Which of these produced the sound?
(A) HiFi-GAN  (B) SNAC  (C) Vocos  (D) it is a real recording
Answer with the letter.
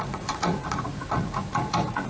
C